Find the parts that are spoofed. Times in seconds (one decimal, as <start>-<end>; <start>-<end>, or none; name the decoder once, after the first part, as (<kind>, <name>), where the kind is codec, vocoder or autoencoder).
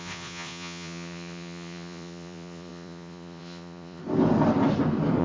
0.0-4.0 (vocoder, Vocos)